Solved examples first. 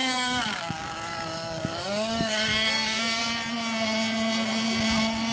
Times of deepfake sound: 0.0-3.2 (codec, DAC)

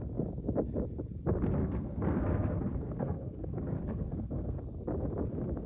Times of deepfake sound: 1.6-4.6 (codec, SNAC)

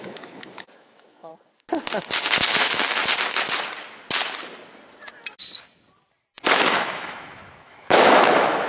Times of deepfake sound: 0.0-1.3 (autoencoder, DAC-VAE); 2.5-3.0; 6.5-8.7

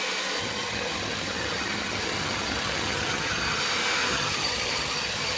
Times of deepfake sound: 0.4-3.6 (vocoder, HiFi-GAN); 4.1-5.4